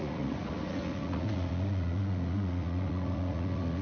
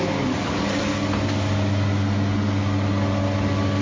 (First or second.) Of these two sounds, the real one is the second